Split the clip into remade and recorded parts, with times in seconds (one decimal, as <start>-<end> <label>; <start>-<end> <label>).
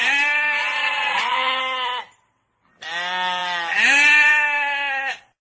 0.0-0.6 recorded; 0.6-1.6 remade; 1.6-5.4 recorded